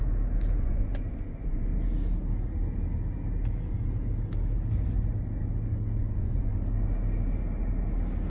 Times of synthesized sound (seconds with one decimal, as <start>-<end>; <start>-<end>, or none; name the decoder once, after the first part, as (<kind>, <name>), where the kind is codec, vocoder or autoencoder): 0.6-1.7 (vocoder, Vocos); 6.0-6.5